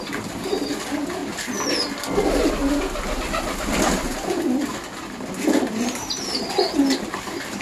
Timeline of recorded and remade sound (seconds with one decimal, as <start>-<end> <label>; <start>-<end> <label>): 0.0-1.2 remade; 1.2-2.0 recorded; 2.0-2.6 remade; 2.6-7.0 recorded; 7.0-7.6 remade